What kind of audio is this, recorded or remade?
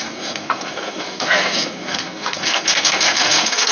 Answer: remade